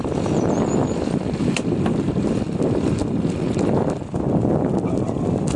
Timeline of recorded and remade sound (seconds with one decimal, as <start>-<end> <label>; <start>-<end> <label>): 0.0-5.6 recorded